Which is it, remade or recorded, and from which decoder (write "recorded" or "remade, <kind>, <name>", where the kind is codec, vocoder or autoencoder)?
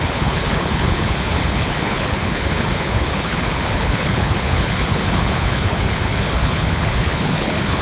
remade, codec, HILCodec